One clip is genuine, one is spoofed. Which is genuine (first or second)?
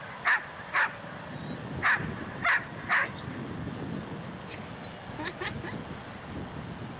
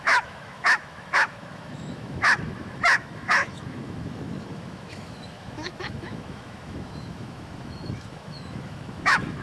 first